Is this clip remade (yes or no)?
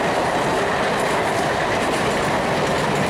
no